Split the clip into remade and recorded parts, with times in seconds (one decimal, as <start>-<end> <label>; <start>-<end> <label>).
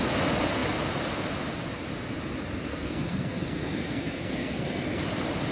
0.0-2.7 recorded; 2.7-5.0 remade; 5.0-5.5 recorded